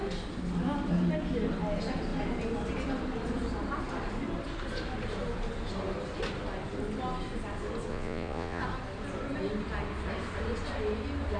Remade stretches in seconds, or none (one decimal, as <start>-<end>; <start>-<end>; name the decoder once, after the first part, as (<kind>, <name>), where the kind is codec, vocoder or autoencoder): 7.9-8.6 (vocoder, Vocos)